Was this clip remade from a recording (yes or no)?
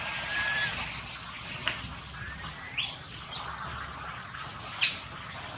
no